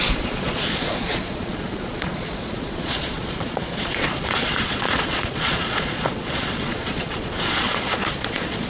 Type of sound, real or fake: fake